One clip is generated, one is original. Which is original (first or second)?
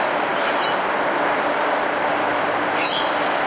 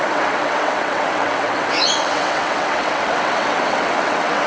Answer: first